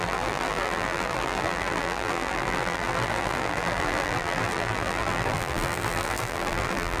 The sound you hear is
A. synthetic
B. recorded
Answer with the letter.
A